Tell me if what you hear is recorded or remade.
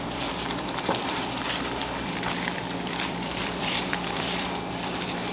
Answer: remade